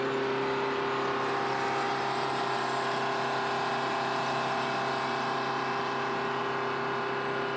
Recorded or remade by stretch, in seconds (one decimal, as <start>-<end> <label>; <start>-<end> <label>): 0.0-7.6 recorded